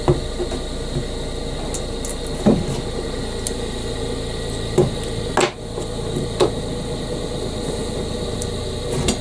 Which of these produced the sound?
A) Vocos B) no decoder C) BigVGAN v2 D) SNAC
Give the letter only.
B